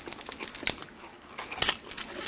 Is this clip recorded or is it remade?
recorded